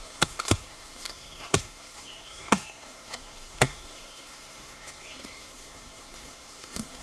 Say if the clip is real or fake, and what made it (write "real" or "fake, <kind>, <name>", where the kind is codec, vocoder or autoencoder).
fake, codec, SNAC